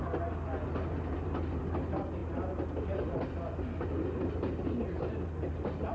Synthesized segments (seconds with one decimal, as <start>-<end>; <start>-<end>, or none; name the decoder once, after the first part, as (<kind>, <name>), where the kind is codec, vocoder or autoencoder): none